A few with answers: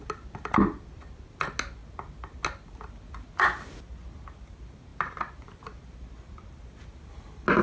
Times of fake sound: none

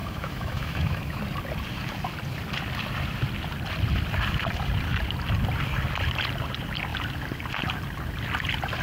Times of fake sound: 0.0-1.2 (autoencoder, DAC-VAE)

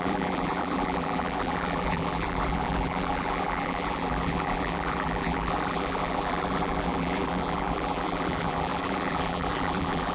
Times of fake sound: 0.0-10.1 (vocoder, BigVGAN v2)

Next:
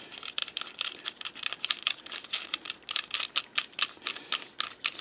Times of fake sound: none